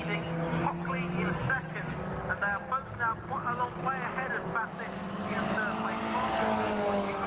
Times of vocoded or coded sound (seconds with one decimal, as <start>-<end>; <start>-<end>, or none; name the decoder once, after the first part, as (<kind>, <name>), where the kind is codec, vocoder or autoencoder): none